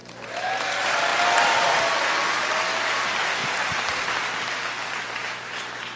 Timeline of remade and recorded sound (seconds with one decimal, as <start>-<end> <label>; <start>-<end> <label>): 0.0-0.5 remade; 0.5-3.4 recorded; 3.4-4.1 remade; 4.1-6.0 recorded